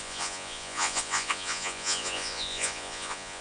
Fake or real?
fake